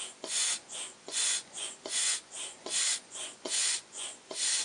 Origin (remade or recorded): remade